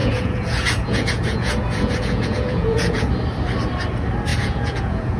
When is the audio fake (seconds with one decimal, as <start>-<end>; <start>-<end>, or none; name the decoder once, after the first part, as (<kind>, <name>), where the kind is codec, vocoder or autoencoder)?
0.0-3.1 (vocoder, Vocos); 4.3-5.2